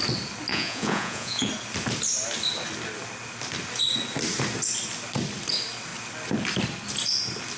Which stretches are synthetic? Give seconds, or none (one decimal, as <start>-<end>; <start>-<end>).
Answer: 0.5-1.5